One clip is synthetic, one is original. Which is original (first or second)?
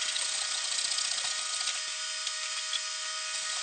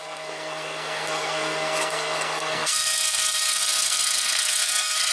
first